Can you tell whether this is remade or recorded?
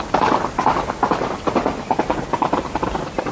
recorded